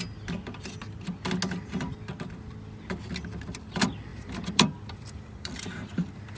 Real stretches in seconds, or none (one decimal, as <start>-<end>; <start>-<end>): 0.0-4.1; 5.6-6.4